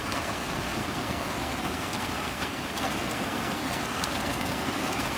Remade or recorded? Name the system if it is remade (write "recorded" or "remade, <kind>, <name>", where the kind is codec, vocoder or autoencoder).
remade, codec, SNAC